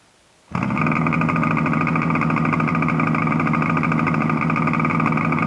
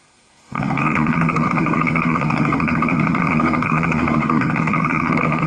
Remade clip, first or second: second